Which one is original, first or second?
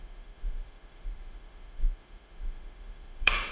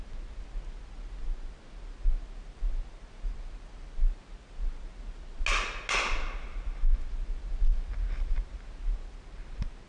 second